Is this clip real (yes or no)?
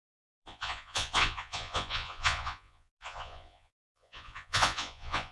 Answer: no